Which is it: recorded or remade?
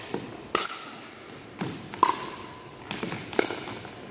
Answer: recorded